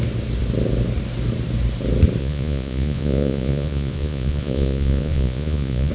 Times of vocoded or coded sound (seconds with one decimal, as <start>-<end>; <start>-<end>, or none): 2.2-5.9